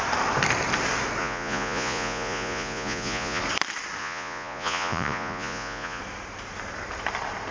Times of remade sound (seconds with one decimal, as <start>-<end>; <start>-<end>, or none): 1.2-3.4; 4.0-6.0